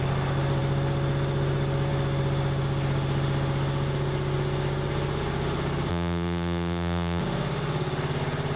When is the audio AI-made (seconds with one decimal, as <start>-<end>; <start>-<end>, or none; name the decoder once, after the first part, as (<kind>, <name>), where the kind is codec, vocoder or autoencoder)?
5.9-7.2 (vocoder, BigVGAN v2)